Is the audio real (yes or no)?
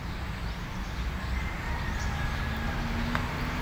yes